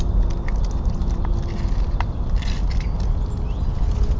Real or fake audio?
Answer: real